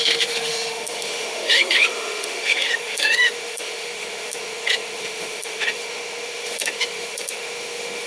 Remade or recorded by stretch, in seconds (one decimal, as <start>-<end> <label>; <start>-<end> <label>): 0.0-8.1 remade